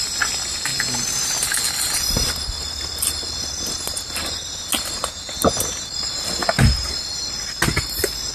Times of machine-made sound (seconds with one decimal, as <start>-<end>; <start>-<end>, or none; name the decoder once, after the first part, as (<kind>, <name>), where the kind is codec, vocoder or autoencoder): 6.4-7.0 (vocoder, BigVGAN v2)